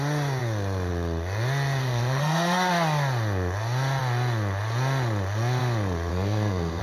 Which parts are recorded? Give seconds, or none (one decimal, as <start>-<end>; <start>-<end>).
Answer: 0.0-1.8; 2.7-6.1